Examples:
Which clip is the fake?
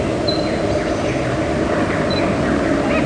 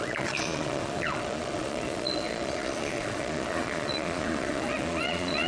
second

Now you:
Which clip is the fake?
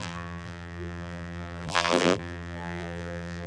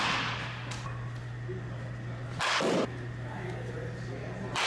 first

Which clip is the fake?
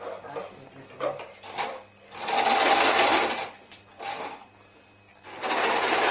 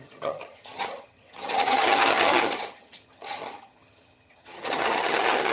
second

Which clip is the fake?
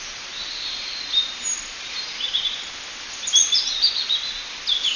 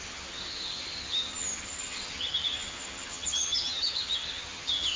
second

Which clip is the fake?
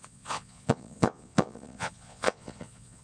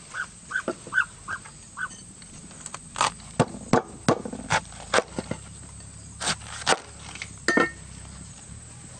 first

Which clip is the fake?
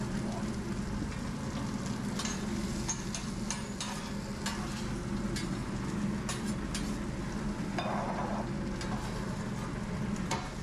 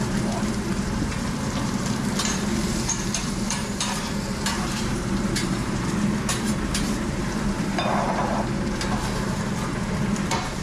second